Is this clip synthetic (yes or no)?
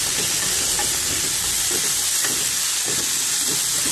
no